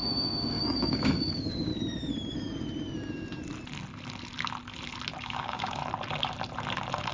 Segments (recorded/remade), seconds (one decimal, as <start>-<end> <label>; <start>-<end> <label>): 0.0-1.7 remade; 1.7-5.2 recorded; 5.2-5.8 remade; 5.8-7.1 recorded